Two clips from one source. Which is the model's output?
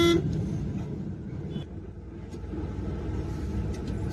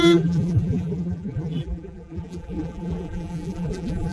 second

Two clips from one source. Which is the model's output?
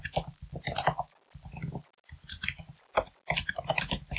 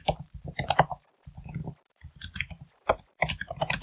second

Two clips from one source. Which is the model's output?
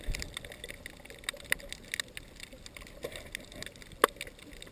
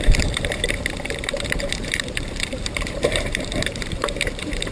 second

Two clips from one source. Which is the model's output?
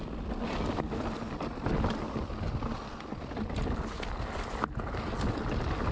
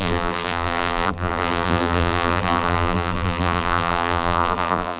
second